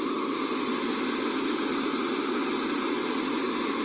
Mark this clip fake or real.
real